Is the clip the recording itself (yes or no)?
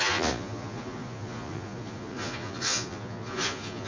no